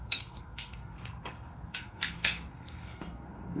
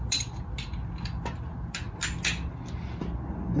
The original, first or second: second